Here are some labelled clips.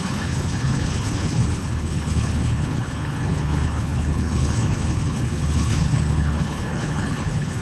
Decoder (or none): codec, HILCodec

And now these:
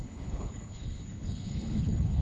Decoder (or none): codec, HILCodec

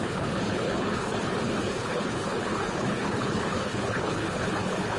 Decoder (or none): codec, HILCodec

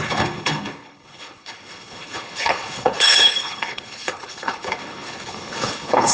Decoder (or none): codec, HILCodec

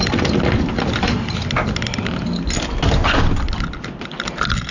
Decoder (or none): none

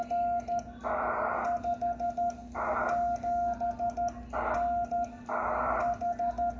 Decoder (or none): none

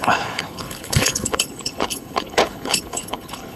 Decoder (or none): codec, HILCodec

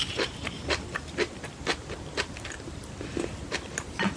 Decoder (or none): none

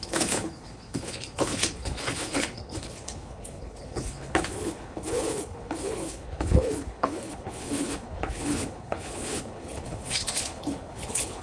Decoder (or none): codec, HILCodec